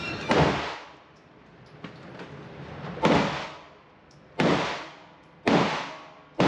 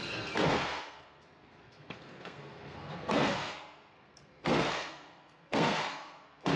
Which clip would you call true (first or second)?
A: first